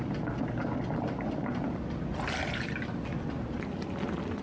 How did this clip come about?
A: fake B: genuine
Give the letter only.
B